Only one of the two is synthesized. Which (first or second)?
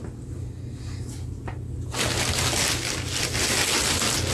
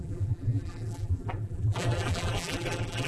second